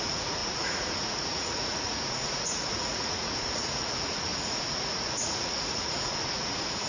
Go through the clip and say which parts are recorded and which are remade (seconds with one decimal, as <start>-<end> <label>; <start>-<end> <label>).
0.0-6.9 remade